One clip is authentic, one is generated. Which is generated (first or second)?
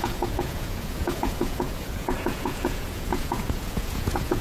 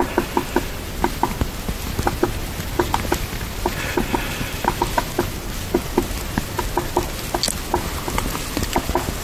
first